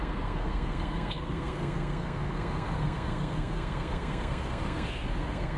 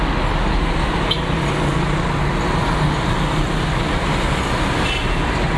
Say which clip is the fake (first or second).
first